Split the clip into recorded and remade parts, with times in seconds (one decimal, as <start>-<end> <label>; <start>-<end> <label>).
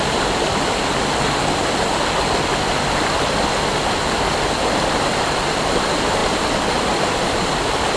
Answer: 0.0-8.0 recorded